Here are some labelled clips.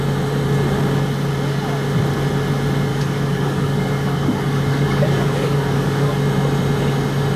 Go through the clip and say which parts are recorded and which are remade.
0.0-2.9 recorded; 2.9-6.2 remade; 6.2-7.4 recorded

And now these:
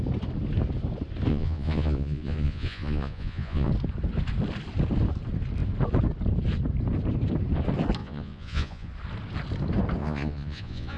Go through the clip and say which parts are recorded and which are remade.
0.0-1.3 recorded; 1.3-3.7 remade; 3.7-8.0 recorded; 8.0-8.9 remade; 8.9-10.0 recorded; 10.0-11.0 remade